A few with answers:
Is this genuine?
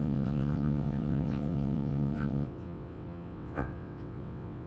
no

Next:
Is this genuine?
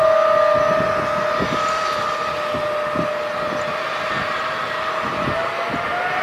yes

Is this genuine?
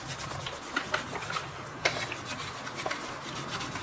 yes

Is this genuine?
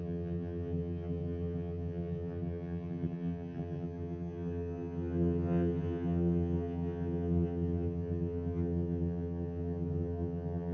no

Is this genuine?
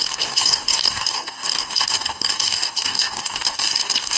no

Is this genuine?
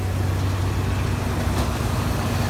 yes